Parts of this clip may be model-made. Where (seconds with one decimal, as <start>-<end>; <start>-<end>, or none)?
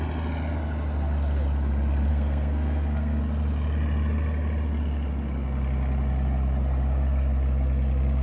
2.1-3.2